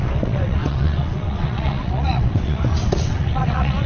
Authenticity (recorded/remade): remade